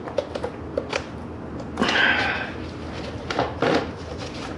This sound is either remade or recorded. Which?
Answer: recorded